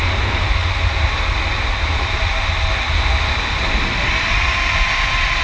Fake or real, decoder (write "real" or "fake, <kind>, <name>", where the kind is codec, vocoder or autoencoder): real